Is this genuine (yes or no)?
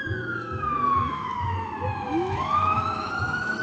no